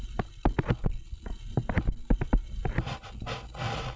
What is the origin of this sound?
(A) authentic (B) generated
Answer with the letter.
A